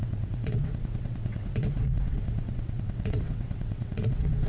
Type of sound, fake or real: fake